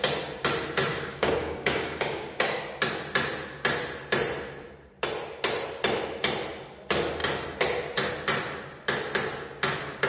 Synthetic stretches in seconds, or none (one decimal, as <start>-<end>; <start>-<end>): 0.9-2.6